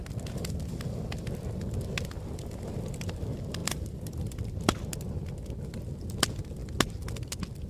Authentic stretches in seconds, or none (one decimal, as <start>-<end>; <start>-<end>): 0.0-3.6; 4.6-7.7